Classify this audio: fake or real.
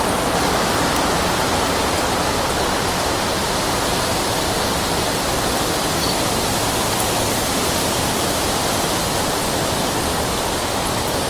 real